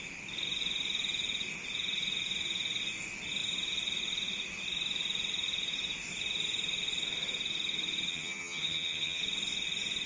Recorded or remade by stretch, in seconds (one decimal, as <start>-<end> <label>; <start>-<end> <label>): 0.0-8.1 recorded; 8.1-9.2 remade; 9.2-10.1 recorded